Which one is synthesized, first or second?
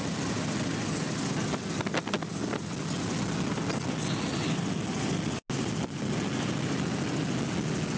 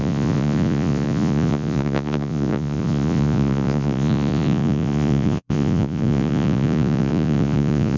second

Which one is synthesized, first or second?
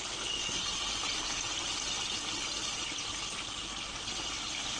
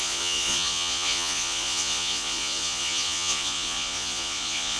second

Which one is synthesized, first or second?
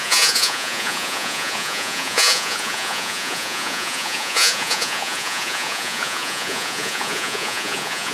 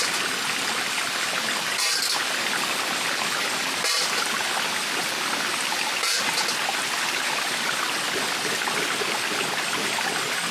first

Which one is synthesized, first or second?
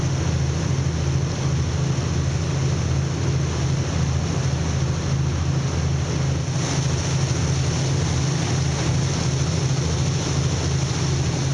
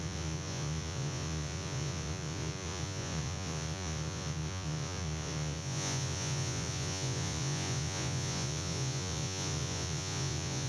second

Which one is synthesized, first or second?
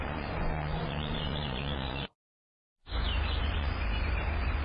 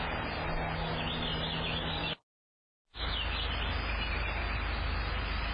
first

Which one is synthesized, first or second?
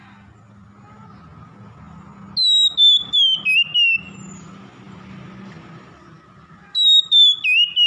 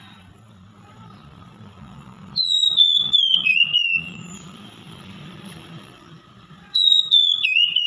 second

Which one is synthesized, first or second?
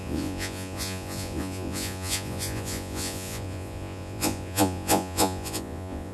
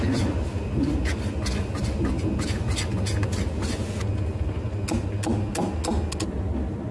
first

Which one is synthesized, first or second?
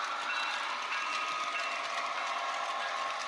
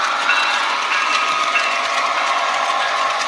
second